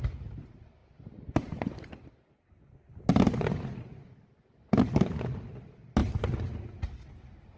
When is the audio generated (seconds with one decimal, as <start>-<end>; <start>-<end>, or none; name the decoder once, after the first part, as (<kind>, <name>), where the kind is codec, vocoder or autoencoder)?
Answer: none